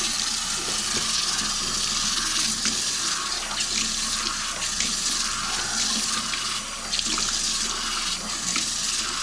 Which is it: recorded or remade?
recorded